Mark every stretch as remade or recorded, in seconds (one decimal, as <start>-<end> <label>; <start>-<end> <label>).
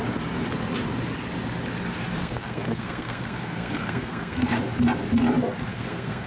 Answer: 0.0-2.2 recorded; 2.2-4.6 remade; 4.6-5.7 recorded; 5.7-6.3 remade